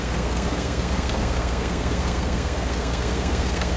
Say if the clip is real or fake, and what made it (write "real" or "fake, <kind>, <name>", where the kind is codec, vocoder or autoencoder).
fake, codec, SNAC